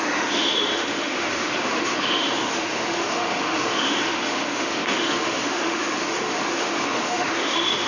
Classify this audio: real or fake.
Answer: fake